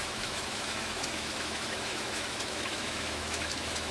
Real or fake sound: fake